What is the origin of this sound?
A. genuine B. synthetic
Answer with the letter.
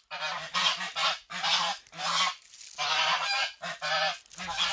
A